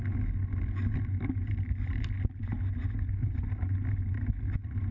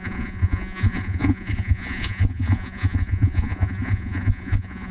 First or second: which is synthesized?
second